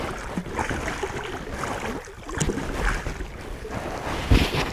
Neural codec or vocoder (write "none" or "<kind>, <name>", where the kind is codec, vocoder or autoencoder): none